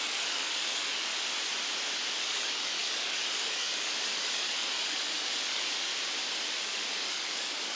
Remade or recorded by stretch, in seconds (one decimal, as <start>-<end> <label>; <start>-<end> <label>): 0.0-1.1 remade; 1.1-2.2 recorded; 2.2-5.9 remade; 5.9-6.6 recorded; 6.6-7.8 remade